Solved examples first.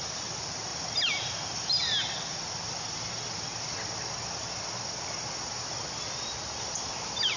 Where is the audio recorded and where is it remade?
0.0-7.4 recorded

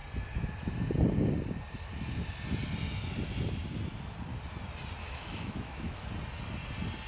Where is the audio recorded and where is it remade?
0.0-5.0 recorded; 5.0-6.1 remade; 6.1-7.1 recorded